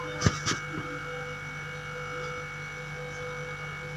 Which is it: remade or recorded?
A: recorded